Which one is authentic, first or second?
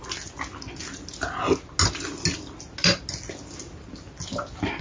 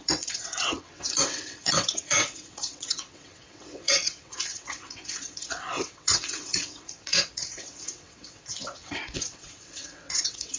first